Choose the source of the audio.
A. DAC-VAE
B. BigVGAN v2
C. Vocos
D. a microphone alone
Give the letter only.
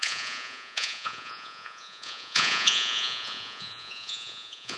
C